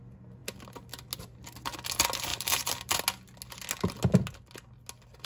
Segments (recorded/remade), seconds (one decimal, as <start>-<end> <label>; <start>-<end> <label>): 0.0-2.3 recorded; 2.3-3.0 remade; 3.0-5.3 recorded